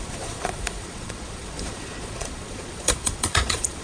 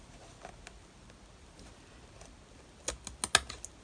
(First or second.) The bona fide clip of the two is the second